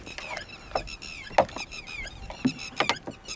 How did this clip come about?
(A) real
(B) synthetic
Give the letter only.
A